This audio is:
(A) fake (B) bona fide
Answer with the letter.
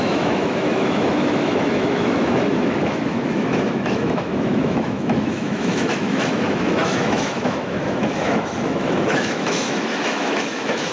A